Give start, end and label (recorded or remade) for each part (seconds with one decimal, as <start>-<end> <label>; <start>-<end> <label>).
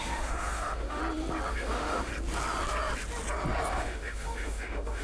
0.0-1.0 remade; 1.0-1.5 recorded; 1.5-2.1 remade; 2.1-3.7 recorded; 3.7-5.0 remade